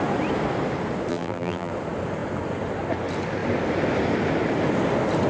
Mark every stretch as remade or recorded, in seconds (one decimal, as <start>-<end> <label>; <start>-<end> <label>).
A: 0.0-1.1 recorded; 1.1-1.7 remade; 1.7-5.3 recorded

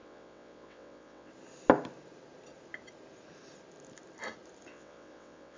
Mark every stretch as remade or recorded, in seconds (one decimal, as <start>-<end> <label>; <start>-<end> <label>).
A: 0.0-1.3 remade; 1.3-4.7 recorded; 4.7-5.6 remade